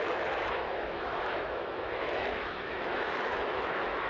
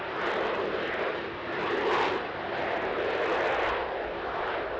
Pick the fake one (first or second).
first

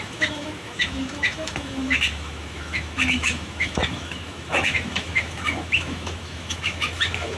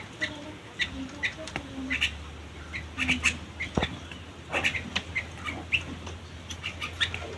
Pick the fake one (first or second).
first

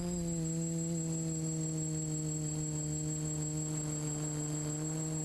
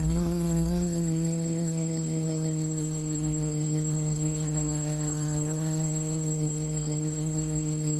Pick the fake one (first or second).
second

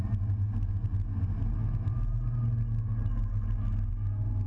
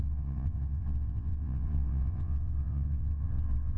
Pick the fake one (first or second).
second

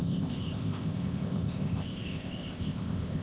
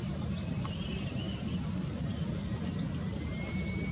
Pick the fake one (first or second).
first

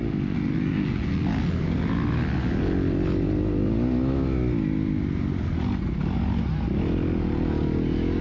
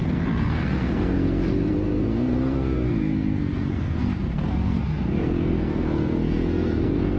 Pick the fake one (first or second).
second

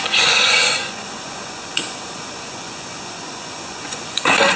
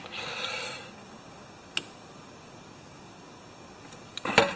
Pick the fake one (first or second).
first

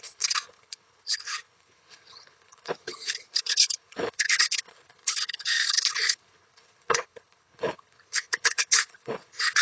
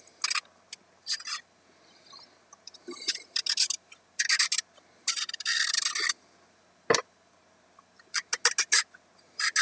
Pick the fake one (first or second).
first